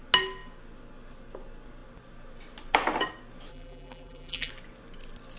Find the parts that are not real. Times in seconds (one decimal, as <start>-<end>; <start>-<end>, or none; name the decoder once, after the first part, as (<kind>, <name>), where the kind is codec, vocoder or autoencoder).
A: 3.5-4.5 (vocoder, BigVGAN v2)